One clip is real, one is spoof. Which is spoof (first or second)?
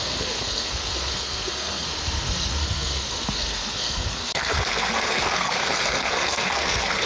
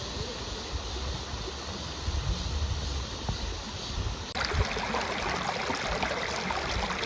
first